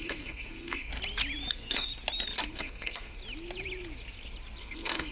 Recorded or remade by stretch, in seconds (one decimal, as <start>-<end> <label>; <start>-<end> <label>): 0.0-0.9 remade; 0.9-1.5 recorded; 1.5-1.9 remade; 1.9-2.5 recorded; 2.5-3.2 remade; 3.2-4.6 recorded; 4.6-5.1 remade